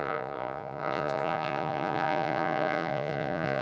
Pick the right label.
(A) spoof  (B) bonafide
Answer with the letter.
A